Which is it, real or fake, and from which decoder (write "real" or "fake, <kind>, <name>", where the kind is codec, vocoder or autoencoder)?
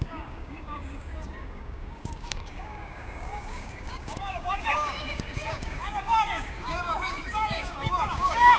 fake, codec, DAC